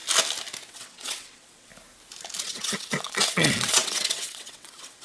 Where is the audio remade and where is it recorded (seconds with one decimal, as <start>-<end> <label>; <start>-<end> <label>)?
0.0-0.7 recorded; 0.7-1.7 remade; 1.7-2.4 recorded; 2.4-5.0 remade